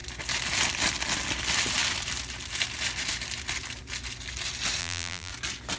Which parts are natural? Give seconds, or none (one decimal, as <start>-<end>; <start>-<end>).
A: 0.0-4.8; 5.3-5.8